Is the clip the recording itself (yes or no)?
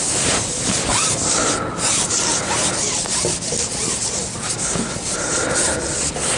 yes